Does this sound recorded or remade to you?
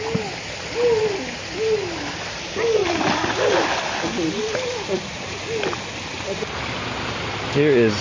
recorded